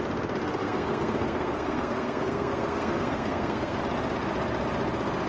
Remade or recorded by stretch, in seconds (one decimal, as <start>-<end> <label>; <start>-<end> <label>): 0.0-0.6 recorded; 0.6-3.8 remade; 3.8-5.3 recorded